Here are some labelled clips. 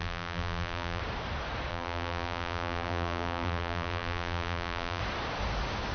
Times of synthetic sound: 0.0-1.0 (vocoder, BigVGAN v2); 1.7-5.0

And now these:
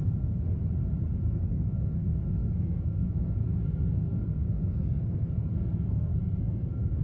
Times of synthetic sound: 0.0-0.6 (codec, SNAC); 1.2-7.0

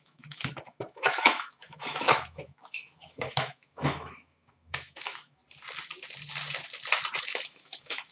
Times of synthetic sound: 0.0-5.4 (autoencoder, DAC-VAE); 7.2-8.1

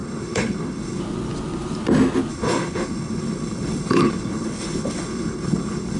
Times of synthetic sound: 0.0-1.0 (codec, HILCodec); 2.3-6.0

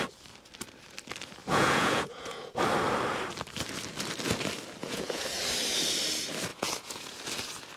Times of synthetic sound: 1.4-2.6 (vocoder, Vocos); 4.8-5.3; 6.5-7.2

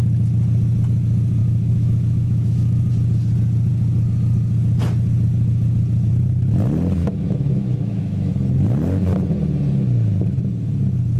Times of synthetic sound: 1.4-2.9 (autoencoder, DAC-VAE); 7.0-8.3